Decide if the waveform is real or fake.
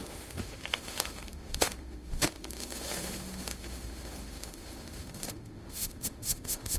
fake